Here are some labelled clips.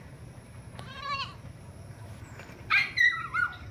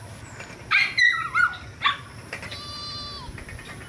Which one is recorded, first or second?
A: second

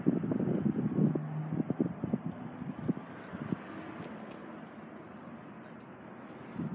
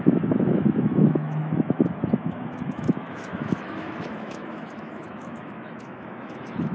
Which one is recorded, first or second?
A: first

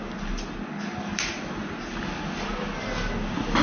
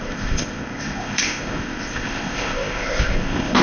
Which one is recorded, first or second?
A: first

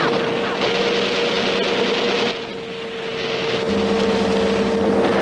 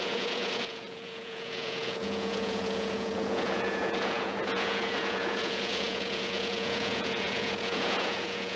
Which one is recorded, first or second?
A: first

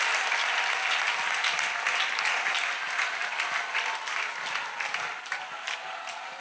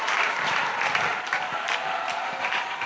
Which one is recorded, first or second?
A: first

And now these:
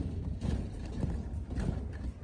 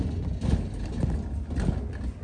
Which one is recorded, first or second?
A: second